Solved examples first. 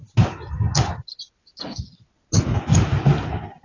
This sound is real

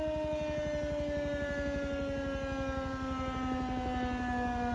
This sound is real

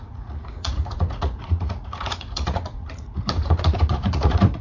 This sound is fake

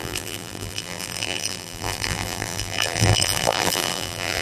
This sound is fake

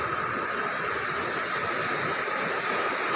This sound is real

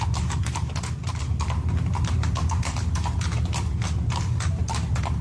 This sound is real